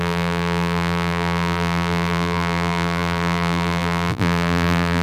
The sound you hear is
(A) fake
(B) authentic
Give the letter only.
A